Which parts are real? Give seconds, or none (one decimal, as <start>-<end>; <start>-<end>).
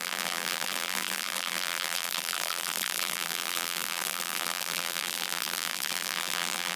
none